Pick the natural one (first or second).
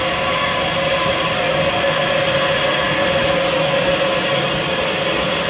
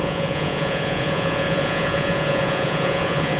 first